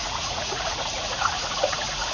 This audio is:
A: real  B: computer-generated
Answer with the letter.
B